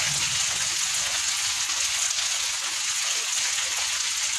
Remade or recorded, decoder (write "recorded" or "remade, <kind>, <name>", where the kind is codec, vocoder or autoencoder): remade, vocoder, Vocos